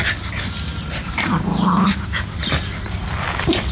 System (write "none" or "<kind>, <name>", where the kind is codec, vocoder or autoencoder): none